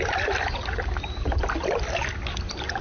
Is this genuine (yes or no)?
yes